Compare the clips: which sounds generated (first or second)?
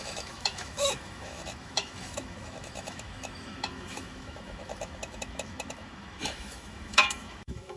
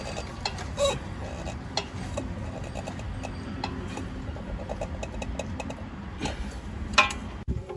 first